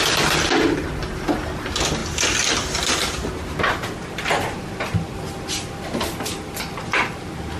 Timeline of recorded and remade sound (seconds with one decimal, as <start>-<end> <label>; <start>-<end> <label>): 0.0-7.6 recorded